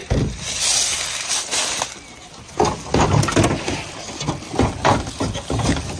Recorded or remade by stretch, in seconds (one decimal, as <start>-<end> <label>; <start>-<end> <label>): 0.0-6.0 recorded